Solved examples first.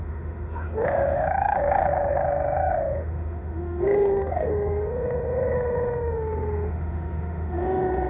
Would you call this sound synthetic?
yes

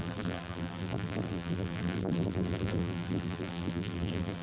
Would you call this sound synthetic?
yes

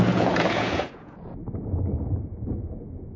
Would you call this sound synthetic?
yes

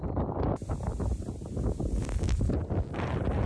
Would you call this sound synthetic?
no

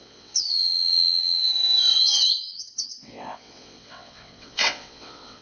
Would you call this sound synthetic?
yes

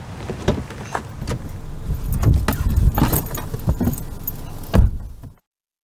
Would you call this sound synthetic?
no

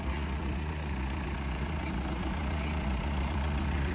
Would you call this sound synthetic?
yes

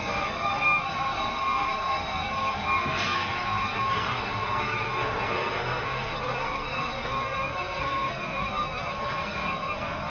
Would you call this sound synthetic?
yes